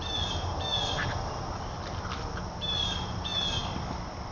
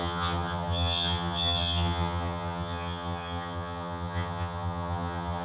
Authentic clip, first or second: first